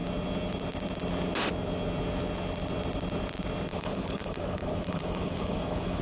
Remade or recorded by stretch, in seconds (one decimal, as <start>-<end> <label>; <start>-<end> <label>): 0.0-3.7 recorded; 3.7-6.0 remade